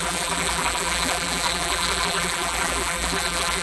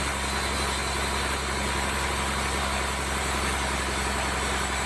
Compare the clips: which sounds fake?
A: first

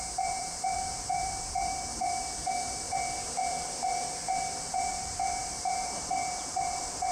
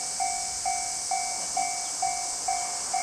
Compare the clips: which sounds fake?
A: first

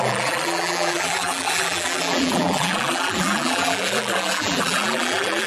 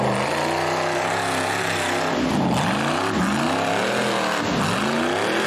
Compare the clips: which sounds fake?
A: first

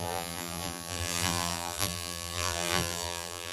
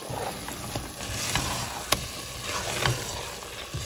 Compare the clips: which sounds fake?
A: first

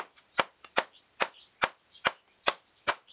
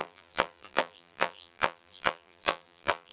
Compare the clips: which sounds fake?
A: second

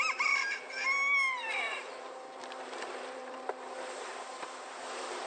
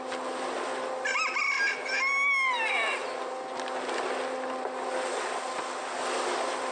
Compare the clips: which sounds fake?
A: first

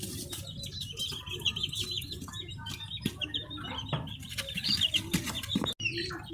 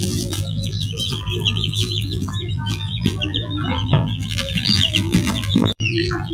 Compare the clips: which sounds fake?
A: second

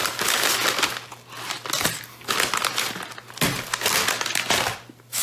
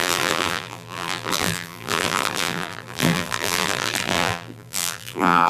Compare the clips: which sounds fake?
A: second